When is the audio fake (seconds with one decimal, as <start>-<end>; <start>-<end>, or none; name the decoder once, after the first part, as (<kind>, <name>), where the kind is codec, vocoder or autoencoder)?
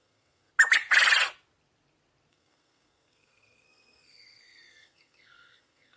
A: 0.0-0.5 (codec, SNAC); 2.3-6.0